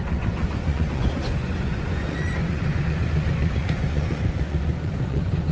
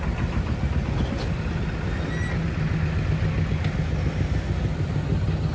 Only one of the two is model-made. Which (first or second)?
first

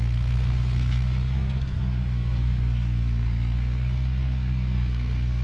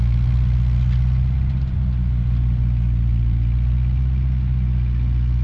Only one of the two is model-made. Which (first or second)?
first